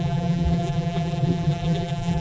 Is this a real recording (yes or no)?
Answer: no